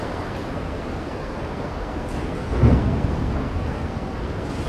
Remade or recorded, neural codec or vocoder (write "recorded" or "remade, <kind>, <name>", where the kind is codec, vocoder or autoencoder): remade, codec, SNAC